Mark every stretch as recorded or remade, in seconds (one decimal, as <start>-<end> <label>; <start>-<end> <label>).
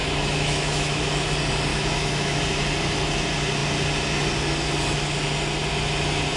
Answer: 0.0-1.0 remade; 1.0-1.7 recorded; 1.7-2.4 remade; 2.4-6.4 recorded